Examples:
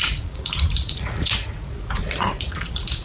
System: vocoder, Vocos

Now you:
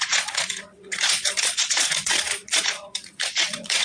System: vocoder, Vocos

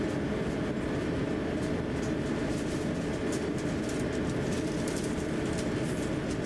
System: none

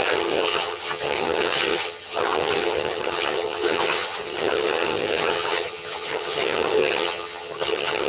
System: vocoder, HiFi-GAN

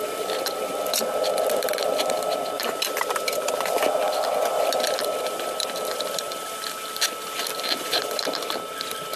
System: vocoder, BigVGAN v2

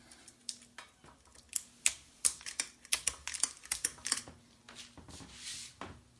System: none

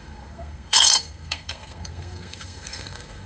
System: codec, SNAC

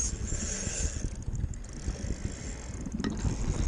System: none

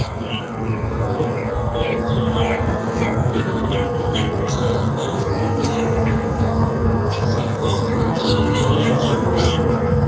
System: codec, SNAC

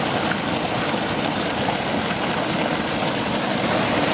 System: none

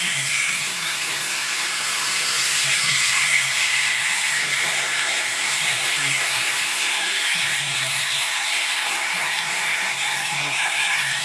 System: codec, SNAC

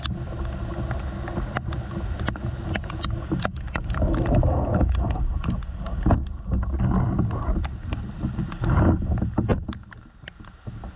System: none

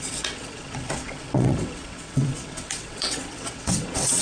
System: vocoder, WaveNeXt